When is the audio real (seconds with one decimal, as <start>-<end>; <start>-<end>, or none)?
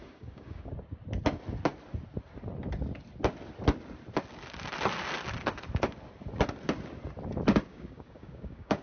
0.7-7.7